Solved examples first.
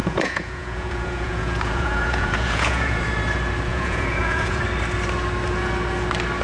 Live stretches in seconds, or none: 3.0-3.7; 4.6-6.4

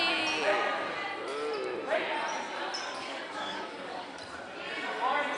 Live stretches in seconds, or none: 0.0-3.0; 4.2-5.4

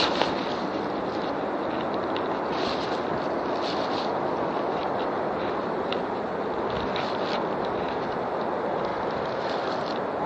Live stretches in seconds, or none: 0.0-4.8; 5.3-8.9; 9.8-10.3